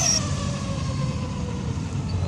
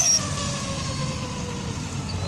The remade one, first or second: first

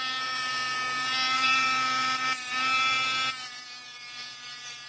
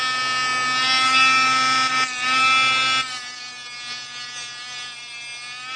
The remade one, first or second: first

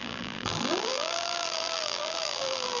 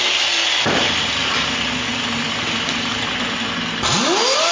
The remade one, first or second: first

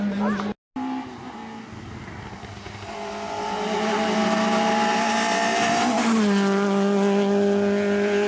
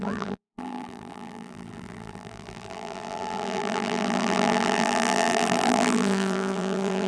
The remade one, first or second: second